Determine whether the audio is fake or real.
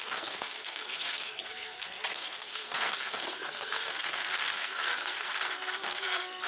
fake